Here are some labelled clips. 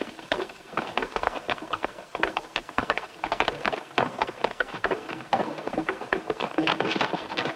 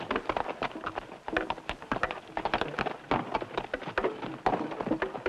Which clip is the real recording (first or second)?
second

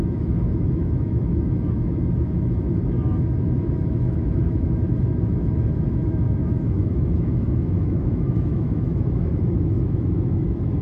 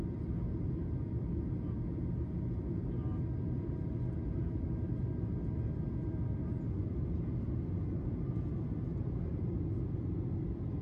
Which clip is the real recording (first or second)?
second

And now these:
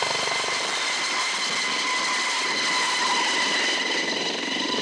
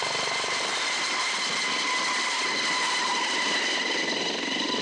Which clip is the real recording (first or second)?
first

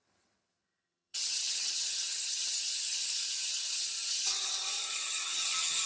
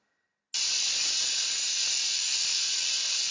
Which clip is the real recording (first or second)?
second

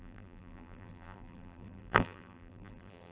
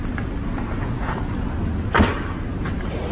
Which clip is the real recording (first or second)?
second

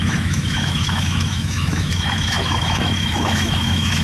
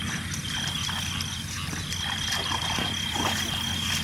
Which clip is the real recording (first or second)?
second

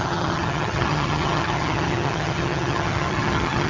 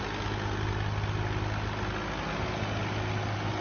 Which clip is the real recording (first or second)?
second